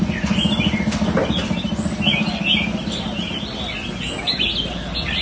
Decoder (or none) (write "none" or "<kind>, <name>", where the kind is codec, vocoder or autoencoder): none